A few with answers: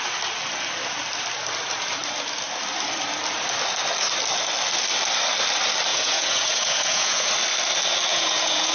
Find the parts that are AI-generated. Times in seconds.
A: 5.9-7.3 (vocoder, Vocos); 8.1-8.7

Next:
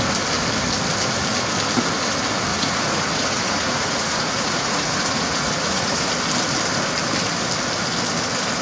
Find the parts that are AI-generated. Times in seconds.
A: 2.5-6.1 (vocoder, Vocos)

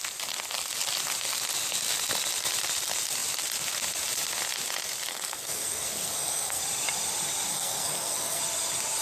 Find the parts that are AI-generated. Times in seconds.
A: 5.1-6.6 (codec, SNAC); 7.5-8.4

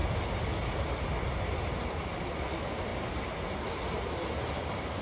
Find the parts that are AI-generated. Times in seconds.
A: none

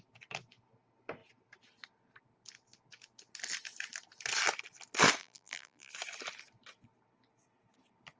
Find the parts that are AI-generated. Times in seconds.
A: 5.2-5.9 (vocoder, BigVGAN v2)